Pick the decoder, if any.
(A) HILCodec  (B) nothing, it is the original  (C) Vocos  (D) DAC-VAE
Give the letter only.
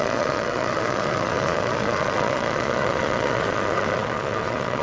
C